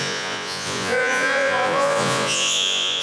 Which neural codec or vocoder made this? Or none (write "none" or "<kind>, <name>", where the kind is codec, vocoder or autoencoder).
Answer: vocoder, Vocos